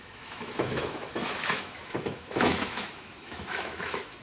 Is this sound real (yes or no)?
no